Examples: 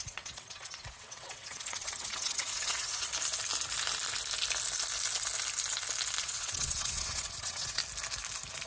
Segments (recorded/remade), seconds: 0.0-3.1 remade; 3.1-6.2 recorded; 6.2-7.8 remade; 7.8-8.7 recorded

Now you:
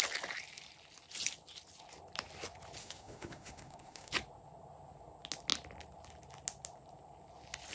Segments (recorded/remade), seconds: 0.0-2.8 recorded; 2.8-4.1 remade; 4.1-7.7 recorded